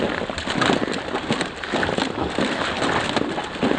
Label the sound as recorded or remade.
recorded